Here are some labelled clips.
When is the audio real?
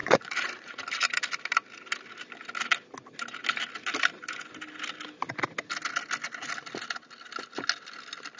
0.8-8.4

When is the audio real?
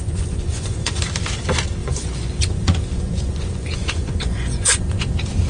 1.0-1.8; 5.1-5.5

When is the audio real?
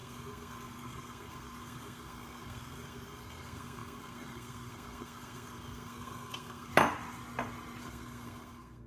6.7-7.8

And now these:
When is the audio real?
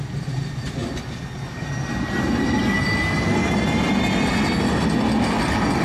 0.0-5.8